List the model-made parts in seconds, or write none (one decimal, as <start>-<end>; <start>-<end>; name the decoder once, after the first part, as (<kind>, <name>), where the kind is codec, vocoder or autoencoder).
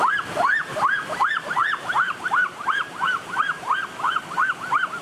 1.6-3.6 (vocoder, BigVGAN v2)